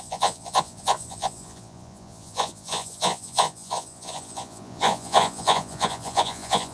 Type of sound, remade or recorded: remade